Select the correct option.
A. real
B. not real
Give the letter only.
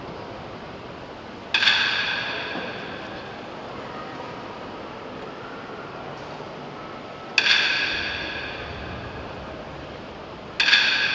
A